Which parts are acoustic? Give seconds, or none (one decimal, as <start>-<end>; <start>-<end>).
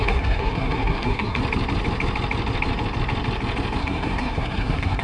1.4-3.8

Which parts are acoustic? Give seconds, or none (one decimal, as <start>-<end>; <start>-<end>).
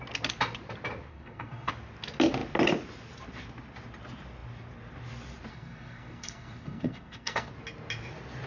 0.0-1.1; 1.7-5.5; 7.5-8.5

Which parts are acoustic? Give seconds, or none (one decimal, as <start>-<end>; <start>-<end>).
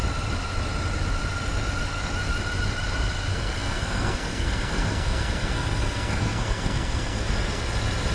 0.0-3.3; 7.6-8.1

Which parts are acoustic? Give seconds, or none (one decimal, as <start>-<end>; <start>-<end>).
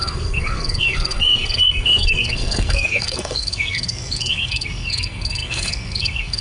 none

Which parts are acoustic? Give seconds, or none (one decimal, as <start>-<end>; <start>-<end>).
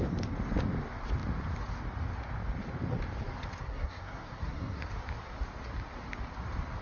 0.0-3.6; 4.9-6.8